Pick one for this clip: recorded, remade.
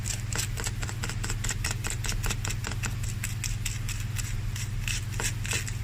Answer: recorded